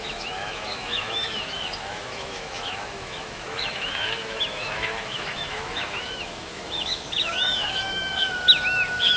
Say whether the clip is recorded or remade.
remade